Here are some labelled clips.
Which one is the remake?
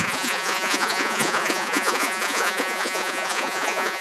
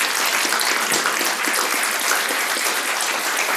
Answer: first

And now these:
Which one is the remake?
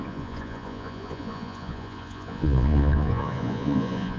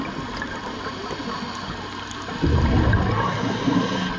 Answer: first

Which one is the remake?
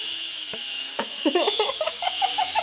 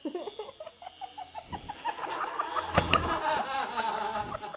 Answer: first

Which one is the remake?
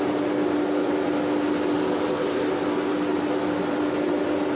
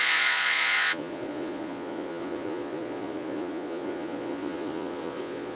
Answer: second